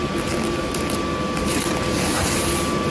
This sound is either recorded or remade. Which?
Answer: recorded